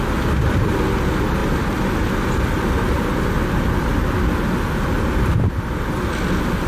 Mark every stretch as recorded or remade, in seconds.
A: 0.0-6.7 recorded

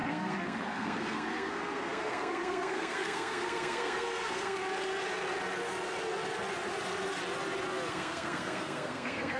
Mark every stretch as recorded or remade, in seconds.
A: 0.0-4.6 remade; 4.6-7.9 recorded; 7.9-9.4 remade

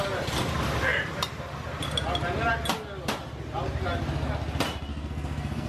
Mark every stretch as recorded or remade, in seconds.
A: 0.0-4.9 recorded; 4.9-5.7 remade

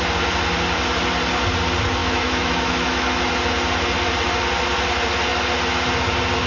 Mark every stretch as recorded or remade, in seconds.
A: 0.0-2.0 recorded; 2.0-3.3 remade; 3.3-6.5 recorded

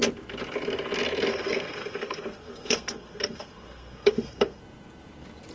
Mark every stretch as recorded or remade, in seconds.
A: 0.0-1.3 recorded; 1.3-4.6 remade; 4.6-5.5 recorded

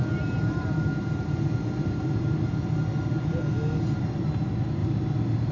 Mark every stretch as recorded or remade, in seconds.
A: 0.0-5.5 recorded

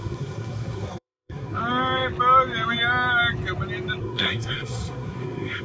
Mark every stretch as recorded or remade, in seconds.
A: 0.0-1.6 remade; 1.6-4.0 recorded; 4.0-5.6 remade

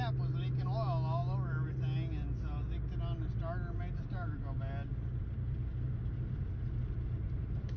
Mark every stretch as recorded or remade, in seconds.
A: 0.0-7.8 recorded